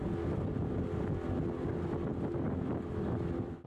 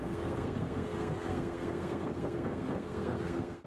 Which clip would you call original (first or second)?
first